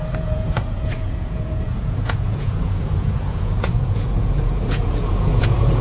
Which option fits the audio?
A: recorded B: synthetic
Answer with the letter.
B